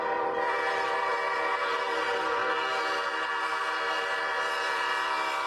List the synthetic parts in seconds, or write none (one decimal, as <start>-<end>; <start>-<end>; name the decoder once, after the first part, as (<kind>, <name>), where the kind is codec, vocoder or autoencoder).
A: 0.0-1.1 (vocoder, BigVGAN v2); 2.0-2.4; 4.2-5.5